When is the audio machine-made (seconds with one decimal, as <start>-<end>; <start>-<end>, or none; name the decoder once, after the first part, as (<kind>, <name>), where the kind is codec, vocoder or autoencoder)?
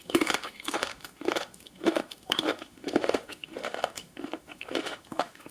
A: 0.0-5.5 (autoencoder, DAC-VAE)